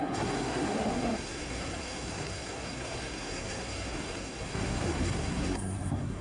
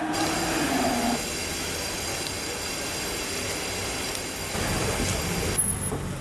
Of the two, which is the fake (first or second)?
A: first